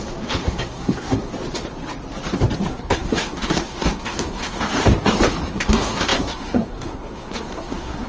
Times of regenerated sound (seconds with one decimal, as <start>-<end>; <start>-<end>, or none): 0.0-1.3; 2.7-4.8; 5.5-8.1